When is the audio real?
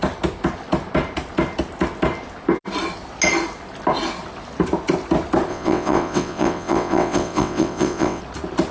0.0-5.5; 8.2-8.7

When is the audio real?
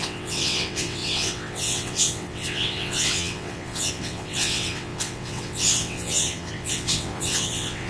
none